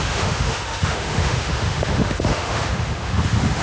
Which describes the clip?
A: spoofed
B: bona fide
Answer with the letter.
A